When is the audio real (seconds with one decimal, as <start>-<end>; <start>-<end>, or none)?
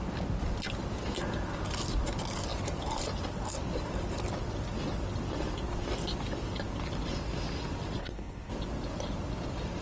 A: 0.0-8.0; 8.5-9.8